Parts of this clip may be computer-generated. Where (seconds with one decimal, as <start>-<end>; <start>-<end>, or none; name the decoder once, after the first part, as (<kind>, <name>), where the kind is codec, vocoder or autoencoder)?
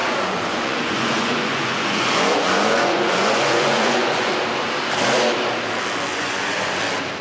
0.0-4.3 (vocoder, Vocos); 6.1-6.8